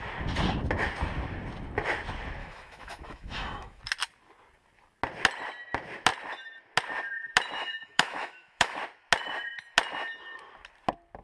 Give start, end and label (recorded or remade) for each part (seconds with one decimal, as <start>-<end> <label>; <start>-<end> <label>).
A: 0.0-2.4 recorded; 2.4-3.8 remade; 3.8-7.6 recorded; 7.6-8.8 remade; 8.8-11.2 recorded